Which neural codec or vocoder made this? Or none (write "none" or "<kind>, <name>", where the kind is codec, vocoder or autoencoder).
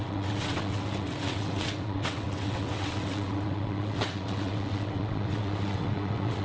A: vocoder, WaveNeXt